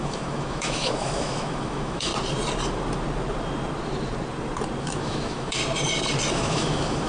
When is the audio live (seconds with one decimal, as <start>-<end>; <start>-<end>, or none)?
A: 2.1-4.8; 5.6-6.3